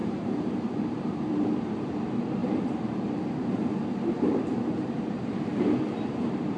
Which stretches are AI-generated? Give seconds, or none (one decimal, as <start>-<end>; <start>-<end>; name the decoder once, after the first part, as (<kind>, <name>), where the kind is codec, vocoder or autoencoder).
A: 0.0-6.6 (vocoder, BigVGAN v2)